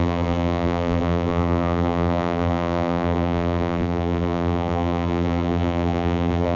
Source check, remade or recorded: remade